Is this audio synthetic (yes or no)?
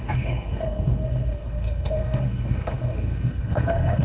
yes